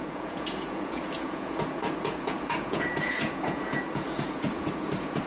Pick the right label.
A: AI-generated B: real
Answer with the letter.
A